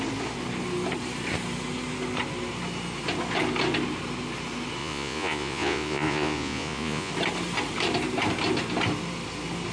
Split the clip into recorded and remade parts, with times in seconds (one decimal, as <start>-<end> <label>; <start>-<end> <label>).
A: 0.0-4.8 recorded; 4.8-7.1 remade; 7.1-9.7 recorded